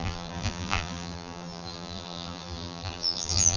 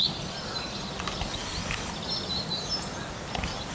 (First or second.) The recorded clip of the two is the second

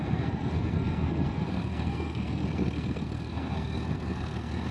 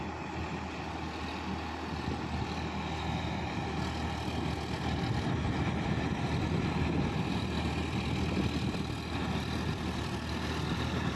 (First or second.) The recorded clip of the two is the second